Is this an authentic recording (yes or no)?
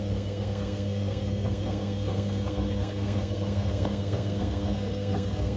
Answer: no